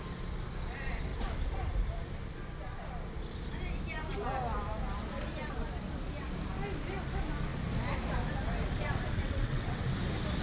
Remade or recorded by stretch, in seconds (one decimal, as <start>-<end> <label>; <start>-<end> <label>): 0.0-9.2 recorded; 9.2-9.9 remade; 9.9-10.4 recorded